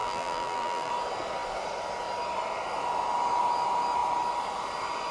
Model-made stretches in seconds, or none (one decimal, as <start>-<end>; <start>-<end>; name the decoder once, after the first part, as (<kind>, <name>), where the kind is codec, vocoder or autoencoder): 0.0-0.9 (vocoder, BigVGAN v2)